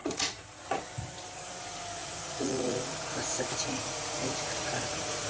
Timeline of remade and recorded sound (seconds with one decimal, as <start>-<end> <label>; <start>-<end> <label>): 0.0-0.8 remade; 0.8-2.0 recorded; 2.0-5.3 remade